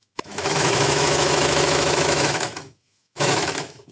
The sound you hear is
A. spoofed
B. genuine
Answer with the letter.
A